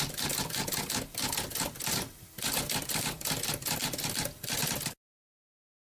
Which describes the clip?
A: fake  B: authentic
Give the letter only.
B